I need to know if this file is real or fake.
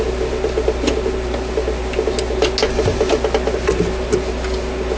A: real